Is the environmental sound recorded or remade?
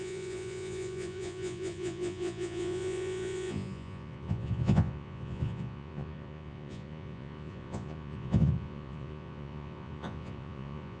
remade